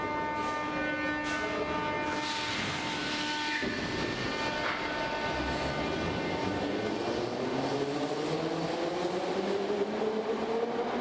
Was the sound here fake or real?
real